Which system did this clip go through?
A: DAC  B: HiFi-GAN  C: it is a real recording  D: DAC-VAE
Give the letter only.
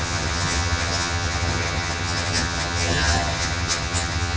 B